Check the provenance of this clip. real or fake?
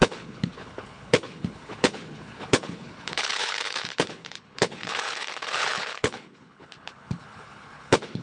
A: fake